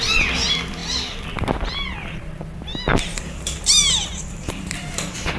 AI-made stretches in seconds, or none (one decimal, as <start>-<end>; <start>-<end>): 2.9-4.9